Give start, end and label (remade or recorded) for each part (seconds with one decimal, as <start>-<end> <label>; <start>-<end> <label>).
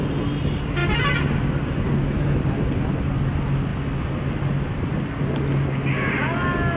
0.0-6.8 recorded